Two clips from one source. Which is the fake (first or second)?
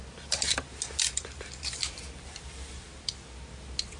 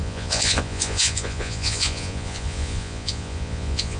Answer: second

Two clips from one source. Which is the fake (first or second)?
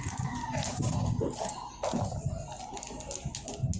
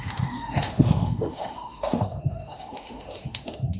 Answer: second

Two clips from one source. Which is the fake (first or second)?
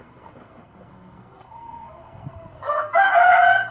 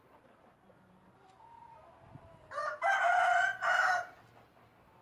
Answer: first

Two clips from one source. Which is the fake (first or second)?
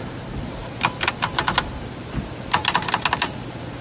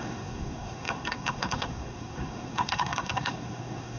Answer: second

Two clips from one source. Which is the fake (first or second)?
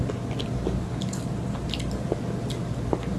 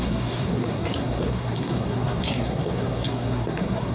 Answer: second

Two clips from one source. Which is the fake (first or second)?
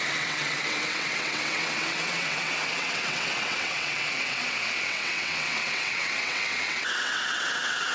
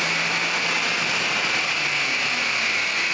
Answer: first